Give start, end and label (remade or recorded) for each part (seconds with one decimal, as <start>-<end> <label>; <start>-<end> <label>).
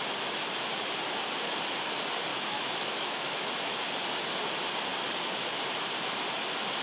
0.0-2.3 recorded; 2.3-3.5 remade; 3.5-6.8 recorded